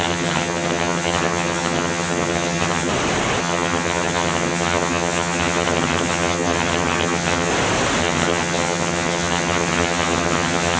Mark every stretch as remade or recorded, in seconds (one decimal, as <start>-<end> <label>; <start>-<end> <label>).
0.0-2.9 remade; 2.9-3.4 recorded; 3.4-7.5 remade; 7.5-8.0 recorded; 8.0-10.8 remade